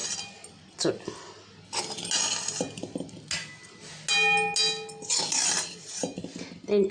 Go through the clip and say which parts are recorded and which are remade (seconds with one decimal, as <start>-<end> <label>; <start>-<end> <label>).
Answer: 0.0-6.9 recorded